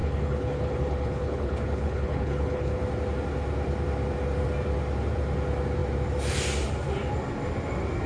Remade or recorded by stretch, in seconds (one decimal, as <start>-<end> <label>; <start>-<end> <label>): 0.0-2.8 remade; 2.8-8.1 recorded